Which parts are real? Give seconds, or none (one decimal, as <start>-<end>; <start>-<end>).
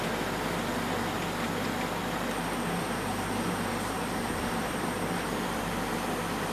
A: 0.0-2.0; 5.9-6.5